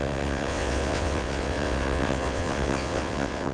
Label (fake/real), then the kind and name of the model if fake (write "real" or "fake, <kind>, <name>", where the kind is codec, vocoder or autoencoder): fake, vocoder, WaveNeXt